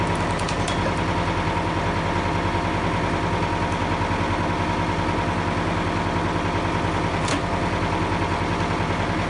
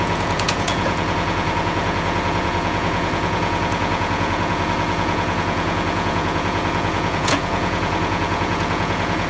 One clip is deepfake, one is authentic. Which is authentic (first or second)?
first